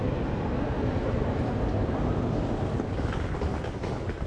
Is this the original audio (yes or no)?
yes